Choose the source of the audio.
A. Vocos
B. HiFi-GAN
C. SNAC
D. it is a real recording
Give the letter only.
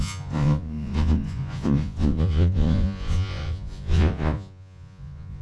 A